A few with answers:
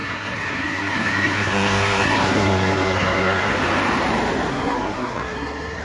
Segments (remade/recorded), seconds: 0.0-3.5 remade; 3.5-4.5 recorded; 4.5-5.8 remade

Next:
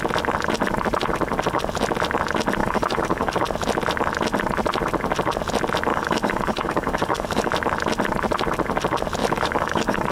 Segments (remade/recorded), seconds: 0.0-2.6 recorded; 2.6-3.4 remade; 3.4-5.9 recorded; 5.9-7.5 remade; 7.5-9.2 recorded; 9.2-10.1 remade

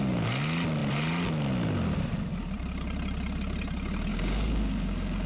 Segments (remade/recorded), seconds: 0.0-4.1 recorded; 4.1-5.3 remade

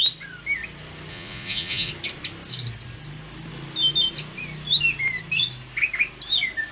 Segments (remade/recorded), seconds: 0.0-1.1 recorded; 1.1-1.9 remade; 1.9-6.7 recorded

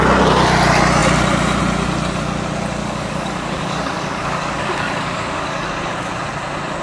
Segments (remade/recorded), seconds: 0.0-2.8 recorded; 2.8-5.7 remade; 5.7-6.8 recorded